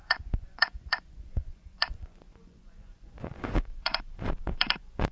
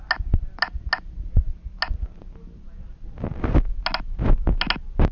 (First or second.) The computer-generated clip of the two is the first